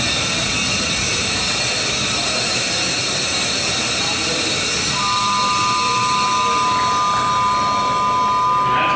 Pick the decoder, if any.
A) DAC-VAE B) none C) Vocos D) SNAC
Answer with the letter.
B